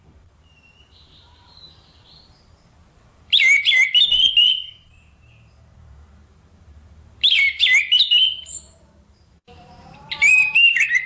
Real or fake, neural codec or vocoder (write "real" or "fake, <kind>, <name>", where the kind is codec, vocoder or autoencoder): fake, vocoder, BigVGAN v2